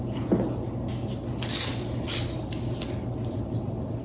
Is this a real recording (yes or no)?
yes